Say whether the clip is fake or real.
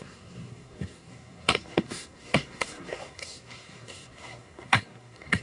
fake